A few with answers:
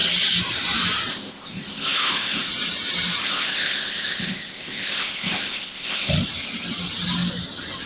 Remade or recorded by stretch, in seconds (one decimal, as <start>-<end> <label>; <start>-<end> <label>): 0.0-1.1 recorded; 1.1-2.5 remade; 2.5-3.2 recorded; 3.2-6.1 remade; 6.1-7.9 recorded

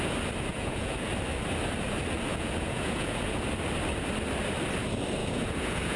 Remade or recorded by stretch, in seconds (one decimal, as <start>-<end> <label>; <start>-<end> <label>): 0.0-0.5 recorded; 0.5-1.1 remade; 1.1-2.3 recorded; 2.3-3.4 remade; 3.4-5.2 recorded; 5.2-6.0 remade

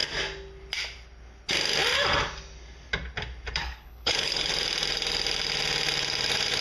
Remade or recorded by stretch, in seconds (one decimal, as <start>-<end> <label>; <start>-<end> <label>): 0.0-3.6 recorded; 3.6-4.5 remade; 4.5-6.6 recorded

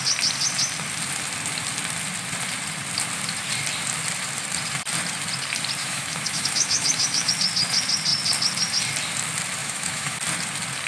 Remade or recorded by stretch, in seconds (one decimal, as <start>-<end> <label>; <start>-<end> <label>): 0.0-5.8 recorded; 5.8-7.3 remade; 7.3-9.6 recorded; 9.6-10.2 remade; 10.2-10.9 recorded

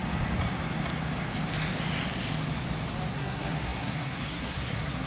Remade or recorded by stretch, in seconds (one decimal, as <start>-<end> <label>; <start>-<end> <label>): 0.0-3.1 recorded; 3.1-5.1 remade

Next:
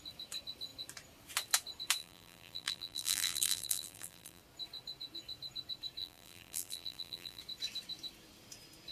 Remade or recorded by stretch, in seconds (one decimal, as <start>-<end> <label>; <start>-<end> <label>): 0.0-2.0 recorded; 2.0-4.4 remade; 4.4-6.0 recorded; 6.0-7.4 remade; 7.4-8.9 recorded